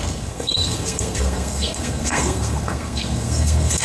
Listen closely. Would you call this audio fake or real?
fake